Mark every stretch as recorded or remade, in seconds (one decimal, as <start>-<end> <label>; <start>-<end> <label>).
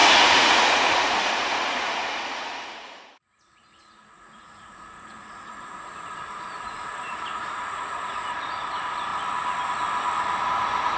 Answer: 0.0-9.1 remade; 9.1-10.4 recorded; 10.4-11.0 remade